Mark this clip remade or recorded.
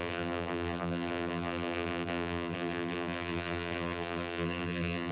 remade